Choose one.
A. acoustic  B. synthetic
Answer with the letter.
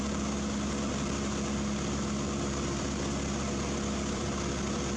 B